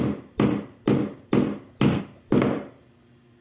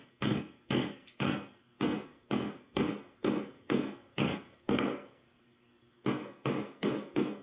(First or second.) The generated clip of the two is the second